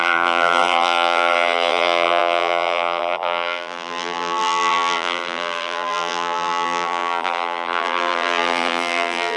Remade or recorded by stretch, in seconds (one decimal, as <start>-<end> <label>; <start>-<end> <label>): 0.0-9.4 remade